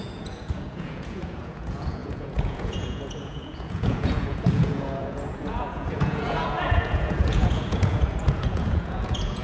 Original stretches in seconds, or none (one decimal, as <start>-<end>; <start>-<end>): none